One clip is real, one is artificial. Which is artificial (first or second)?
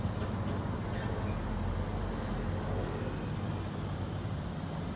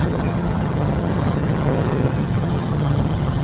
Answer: second